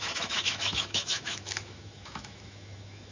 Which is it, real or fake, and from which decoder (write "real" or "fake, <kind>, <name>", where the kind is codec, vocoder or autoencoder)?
fake, autoencoder, DAC-VAE